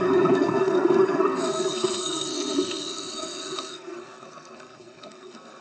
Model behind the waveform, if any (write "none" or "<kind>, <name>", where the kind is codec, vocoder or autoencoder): codec, SNAC